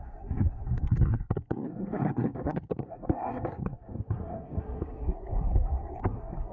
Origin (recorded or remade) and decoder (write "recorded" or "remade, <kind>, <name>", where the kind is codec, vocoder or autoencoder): remade, codec, SNAC